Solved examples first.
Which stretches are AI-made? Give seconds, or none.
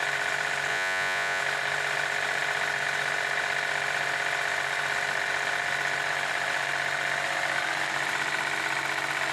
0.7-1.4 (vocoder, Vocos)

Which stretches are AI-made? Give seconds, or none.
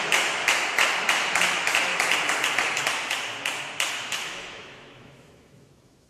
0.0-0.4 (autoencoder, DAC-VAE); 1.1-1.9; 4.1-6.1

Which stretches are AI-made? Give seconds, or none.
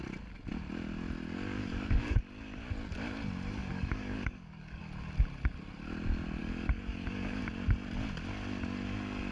1.6-2.2 (codec, DAC); 3.6-4.8; 6.4-7.4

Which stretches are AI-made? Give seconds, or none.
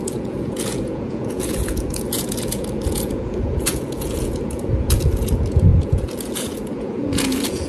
0.0-7.7 (vocoder, Vocos)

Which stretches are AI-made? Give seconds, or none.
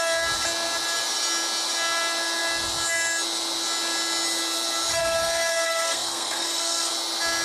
5.0-6.9 (codec, SNAC)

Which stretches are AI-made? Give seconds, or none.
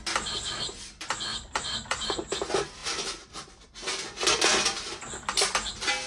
1.3-2.3 (vocoder, BigVGAN v2); 2.8-3.5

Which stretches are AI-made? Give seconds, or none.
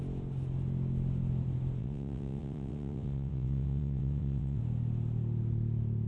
1.8-4.6 (vocoder, WaveNeXt)